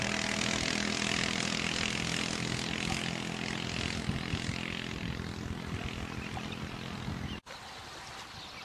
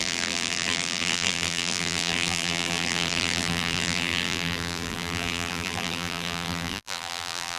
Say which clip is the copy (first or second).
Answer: second